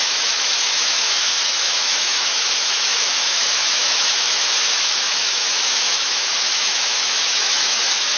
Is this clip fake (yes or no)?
yes